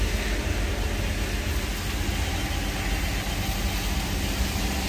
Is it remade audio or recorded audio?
recorded